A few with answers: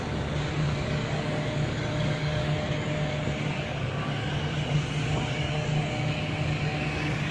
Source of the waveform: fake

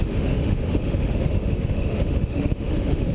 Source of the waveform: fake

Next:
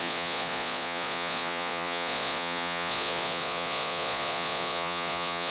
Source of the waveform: fake